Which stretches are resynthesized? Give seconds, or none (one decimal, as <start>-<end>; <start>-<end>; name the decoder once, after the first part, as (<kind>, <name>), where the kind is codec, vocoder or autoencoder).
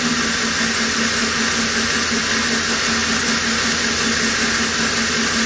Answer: none